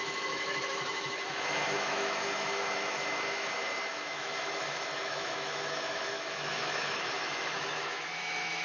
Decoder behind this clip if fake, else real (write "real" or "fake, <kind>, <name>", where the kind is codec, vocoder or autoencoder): fake, autoencoder, DAC-VAE